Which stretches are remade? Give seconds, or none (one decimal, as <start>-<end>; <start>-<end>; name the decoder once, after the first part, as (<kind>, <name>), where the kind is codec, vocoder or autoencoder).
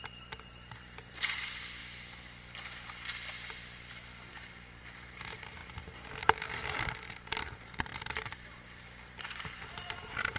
0.0-1.8 (vocoder, BigVGAN v2); 4.3-5.6; 6.2-10.4